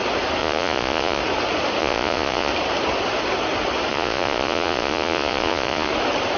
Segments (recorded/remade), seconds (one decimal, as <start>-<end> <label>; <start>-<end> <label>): 0.0-0.4 recorded; 0.4-1.2 remade; 1.2-1.8 recorded; 1.8-2.5 remade; 2.5-3.9 recorded; 3.9-5.9 remade; 5.9-6.4 recorded